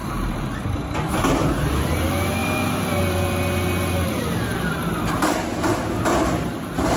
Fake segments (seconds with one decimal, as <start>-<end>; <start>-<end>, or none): 0.0-0.8; 2.4-3.3; 4.5-5.7